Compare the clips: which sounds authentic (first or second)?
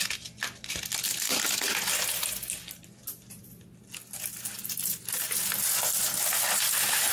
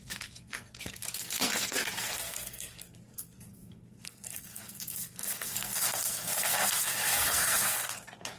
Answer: first